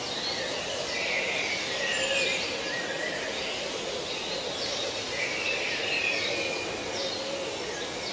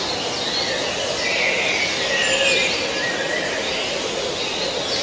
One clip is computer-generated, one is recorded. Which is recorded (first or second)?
second